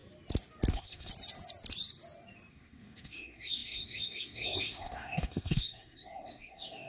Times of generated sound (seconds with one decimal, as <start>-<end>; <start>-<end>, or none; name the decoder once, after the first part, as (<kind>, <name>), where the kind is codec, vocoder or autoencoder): 0.7-1.1 (codec, SNAC); 2.5-6.9